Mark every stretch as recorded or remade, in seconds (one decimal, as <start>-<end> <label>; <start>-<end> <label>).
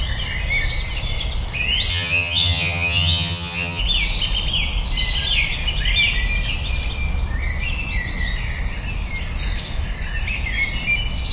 0.0-1.9 recorded; 1.9-3.8 remade; 3.8-11.3 recorded